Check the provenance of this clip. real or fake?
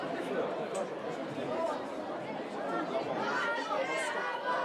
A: real